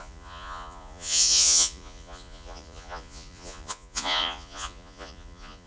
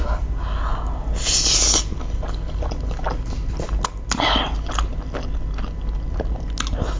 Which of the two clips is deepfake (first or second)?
first